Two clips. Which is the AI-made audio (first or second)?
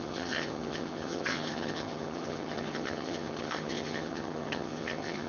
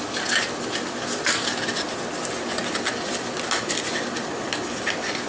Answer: first